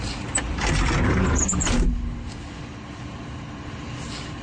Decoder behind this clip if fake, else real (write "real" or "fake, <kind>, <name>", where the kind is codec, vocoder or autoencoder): real